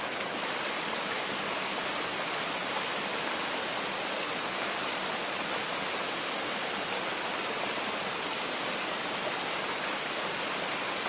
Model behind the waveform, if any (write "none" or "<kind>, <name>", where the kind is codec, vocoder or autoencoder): none